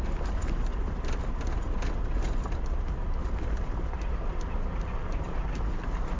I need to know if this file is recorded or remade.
recorded